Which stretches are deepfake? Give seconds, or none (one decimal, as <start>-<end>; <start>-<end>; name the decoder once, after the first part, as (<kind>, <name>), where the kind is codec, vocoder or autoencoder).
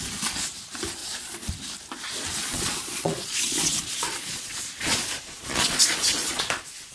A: 1.0-1.5 (vocoder, Vocos); 2.4-6.5